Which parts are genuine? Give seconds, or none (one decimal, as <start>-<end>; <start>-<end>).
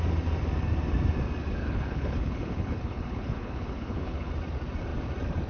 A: 0.0-1.6; 4.3-5.5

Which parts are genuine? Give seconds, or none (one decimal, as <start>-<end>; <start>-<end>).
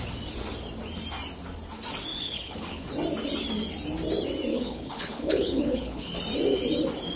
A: 0.0-2.1; 2.9-4.5; 6.1-7.2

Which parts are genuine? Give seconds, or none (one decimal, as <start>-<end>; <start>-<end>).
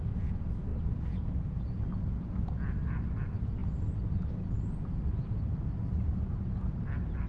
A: 0.0-7.3